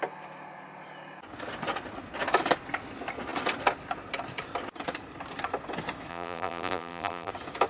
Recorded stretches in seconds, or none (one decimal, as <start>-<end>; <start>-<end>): 0.0-6.1; 7.3-7.7